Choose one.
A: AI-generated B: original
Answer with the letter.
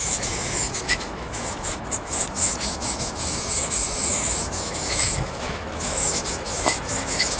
A